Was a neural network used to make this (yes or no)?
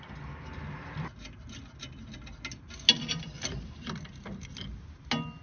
no